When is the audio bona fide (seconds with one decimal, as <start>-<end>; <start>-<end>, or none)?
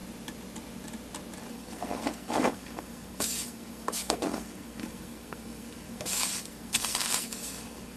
0.0-1.5